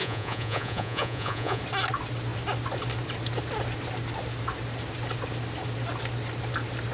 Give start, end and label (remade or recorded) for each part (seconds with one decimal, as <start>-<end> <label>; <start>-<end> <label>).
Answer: 0.0-1.6 remade; 1.6-6.9 recorded